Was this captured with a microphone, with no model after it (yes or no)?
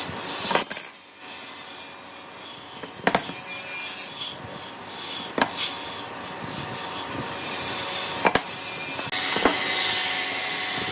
yes